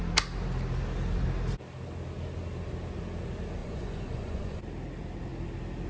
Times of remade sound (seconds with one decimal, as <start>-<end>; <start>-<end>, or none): 3.6-4.6